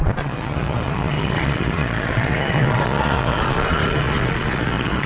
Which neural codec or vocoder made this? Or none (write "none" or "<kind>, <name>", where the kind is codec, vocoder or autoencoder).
vocoder, Vocos